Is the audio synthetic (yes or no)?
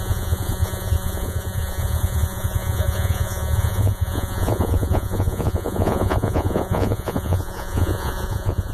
yes